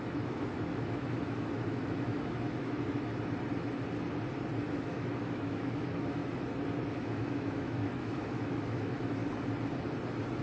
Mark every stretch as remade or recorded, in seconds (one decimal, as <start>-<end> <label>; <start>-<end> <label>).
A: 0.0-3.1 remade; 3.1-4.7 recorded; 4.7-6.2 remade; 6.2-6.9 recorded; 6.9-9.2 remade; 9.2-10.4 recorded